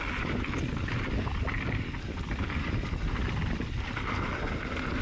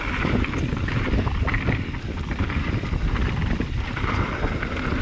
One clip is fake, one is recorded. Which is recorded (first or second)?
first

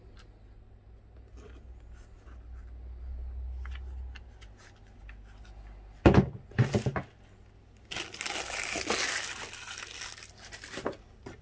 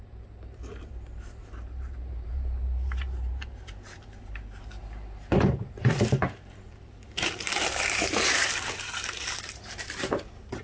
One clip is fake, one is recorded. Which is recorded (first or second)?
first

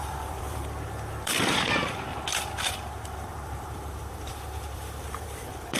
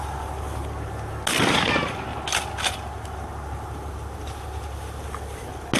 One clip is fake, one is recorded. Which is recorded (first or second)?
second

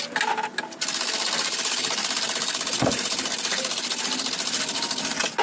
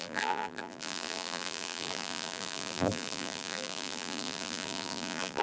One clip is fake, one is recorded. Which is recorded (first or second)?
first